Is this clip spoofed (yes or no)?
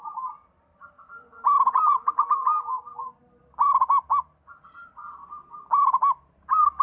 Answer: no